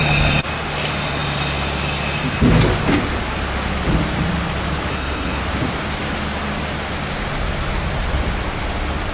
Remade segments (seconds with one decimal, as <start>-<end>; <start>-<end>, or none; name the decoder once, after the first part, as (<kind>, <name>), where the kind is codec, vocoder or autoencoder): 4.9-5.4 (codec, SNAC)